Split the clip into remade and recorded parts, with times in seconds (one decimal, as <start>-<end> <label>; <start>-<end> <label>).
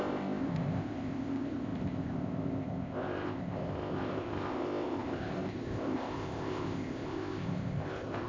0.0-8.3 remade